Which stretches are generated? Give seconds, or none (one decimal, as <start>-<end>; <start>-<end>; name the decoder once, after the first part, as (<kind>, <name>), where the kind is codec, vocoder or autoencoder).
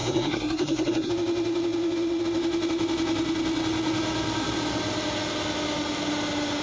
0.0-1.1 (codec, SNAC)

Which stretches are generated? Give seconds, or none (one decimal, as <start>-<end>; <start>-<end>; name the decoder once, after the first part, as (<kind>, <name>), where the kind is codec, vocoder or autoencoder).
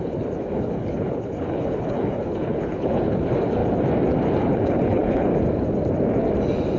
0.0-3.6 (codec, HILCodec); 4.4-5.3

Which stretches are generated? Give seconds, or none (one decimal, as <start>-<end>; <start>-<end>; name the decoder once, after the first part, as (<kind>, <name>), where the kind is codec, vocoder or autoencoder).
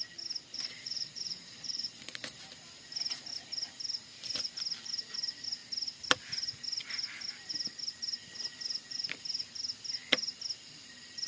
0.5-2.4 (vocoder, Vocos)